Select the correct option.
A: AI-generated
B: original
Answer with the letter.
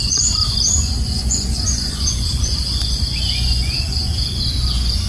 A